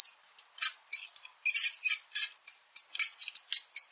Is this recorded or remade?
recorded